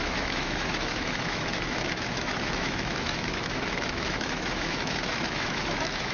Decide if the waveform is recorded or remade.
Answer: remade